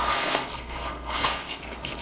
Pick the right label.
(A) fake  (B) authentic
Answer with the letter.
A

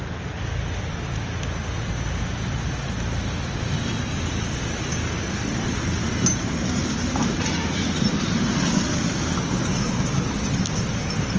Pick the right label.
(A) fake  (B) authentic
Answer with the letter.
B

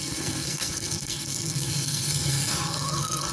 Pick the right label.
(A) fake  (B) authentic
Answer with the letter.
A